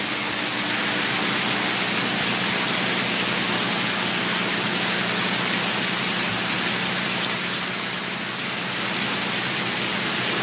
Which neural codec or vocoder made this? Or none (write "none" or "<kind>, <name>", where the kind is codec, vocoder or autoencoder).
none